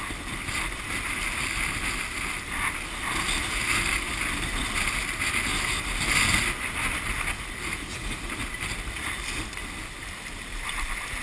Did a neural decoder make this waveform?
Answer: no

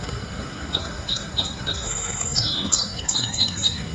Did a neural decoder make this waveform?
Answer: yes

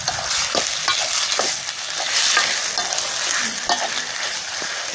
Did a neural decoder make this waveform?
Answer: no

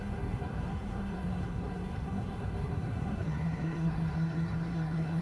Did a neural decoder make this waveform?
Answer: yes